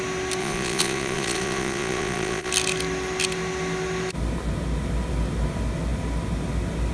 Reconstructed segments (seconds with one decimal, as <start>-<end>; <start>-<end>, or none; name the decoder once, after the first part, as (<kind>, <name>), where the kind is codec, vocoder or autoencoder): 0.4-2.5 (vocoder, Vocos)